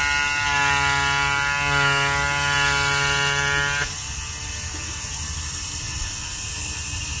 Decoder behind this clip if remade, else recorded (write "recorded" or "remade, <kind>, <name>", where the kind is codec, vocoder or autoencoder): recorded